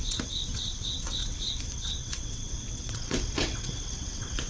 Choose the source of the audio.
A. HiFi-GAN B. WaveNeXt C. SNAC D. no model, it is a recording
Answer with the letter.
B